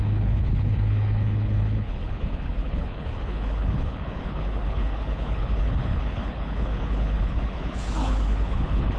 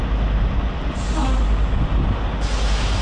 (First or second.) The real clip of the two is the second